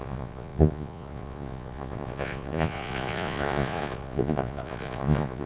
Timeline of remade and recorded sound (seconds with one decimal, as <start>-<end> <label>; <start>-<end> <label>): 0.0-5.5 remade